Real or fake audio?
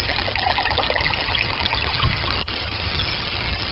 fake